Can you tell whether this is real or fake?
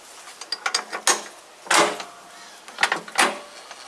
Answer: real